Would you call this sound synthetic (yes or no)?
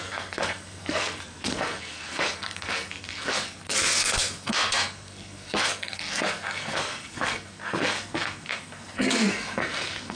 yes